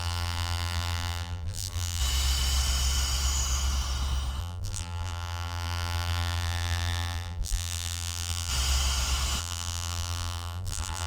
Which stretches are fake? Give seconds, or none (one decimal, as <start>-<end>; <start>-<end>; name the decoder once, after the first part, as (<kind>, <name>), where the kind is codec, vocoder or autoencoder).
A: 0.0-2.0 (vocoder, BigVGAN v2); 4.4-8.5; 9.4-11.1